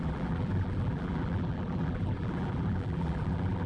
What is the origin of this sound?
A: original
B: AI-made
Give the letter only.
B